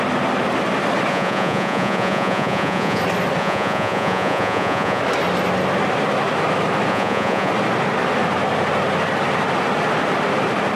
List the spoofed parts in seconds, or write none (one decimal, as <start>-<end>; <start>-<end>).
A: 1.1-3.0; 3.4-5.0; 6.9-7.5